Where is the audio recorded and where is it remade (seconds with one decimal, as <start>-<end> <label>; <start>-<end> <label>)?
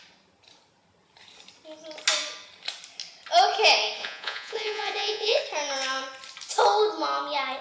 0.0-4.0 recorded; 4.0-5.4 remade; 5.4-7.6 recorded